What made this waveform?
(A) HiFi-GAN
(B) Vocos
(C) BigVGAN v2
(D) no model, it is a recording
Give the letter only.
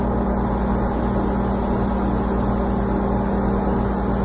D